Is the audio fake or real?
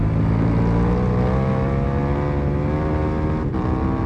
real